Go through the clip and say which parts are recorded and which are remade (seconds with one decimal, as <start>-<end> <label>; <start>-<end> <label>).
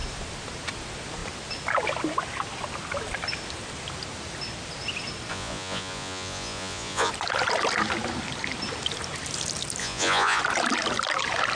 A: 0.0-5.3 recorded; 5.3-7.1 remade; 7.1-9.8 recorded; 9.8-10.4 remade; 10.4-11.6 recorded